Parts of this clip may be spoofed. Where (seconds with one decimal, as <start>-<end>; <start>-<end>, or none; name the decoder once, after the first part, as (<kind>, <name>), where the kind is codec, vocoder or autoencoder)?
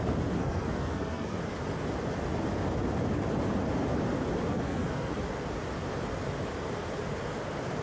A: 0.4-1.4 (codec, SNAC); 4.5-5.1